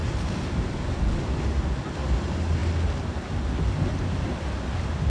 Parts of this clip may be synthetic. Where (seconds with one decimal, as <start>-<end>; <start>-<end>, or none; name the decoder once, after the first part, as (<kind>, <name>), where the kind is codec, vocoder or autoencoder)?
none